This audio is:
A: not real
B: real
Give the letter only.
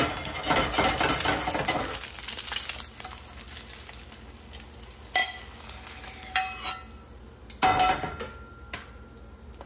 B